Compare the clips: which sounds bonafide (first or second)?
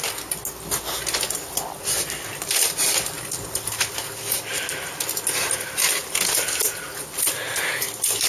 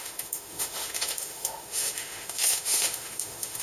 first